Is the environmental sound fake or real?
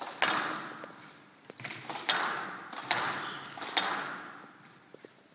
real